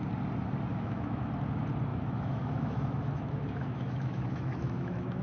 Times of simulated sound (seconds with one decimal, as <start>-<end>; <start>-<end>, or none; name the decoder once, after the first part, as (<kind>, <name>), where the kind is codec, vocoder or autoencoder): 0.7-1.3 (autoencoder, DAC-VAE); 1.9-5.2